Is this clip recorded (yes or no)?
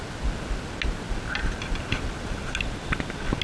yes